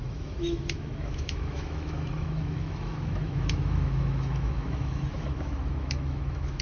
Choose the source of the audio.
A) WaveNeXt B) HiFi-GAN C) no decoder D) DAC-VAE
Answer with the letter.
D